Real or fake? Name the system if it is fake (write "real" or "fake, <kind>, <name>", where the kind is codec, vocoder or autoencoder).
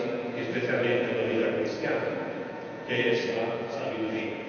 fake, vocoder, Vocos